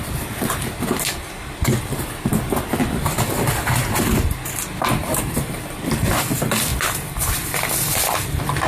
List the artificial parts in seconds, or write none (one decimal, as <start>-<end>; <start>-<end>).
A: 5.0-6.1; 6.7-7.2